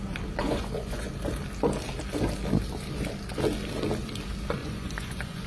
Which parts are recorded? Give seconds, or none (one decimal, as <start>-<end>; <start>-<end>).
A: 0.0-0.4; 1.1-4.6